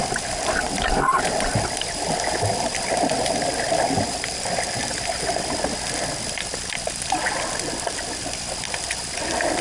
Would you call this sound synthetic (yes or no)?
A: no